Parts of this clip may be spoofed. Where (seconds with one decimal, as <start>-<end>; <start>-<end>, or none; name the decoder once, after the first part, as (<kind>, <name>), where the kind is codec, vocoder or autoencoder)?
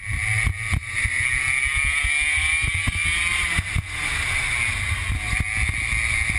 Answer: none